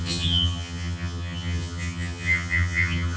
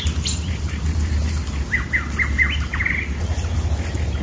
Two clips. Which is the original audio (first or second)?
second